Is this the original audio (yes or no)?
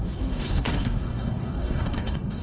no